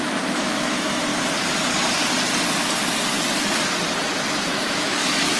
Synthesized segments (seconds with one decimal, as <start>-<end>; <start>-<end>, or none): 0.0-1.1; 4.3-5.4